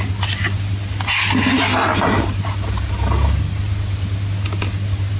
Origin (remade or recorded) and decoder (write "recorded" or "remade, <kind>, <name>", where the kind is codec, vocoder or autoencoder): recorded